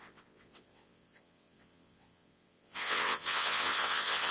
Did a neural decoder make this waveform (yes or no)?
yes